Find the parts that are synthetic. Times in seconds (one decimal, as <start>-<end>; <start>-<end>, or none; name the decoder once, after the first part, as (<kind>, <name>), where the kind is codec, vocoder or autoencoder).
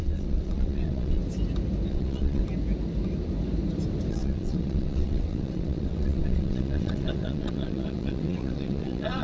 0.0-1.2 (vocoder, WaveNeXt); 1.9-2.4; 4.1-9.2